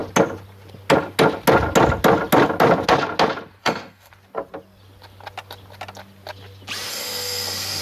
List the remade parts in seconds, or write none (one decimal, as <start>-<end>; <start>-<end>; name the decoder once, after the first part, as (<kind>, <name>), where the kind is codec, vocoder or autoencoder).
3.6-4.1 (codec, SNAC); 6.9-7.8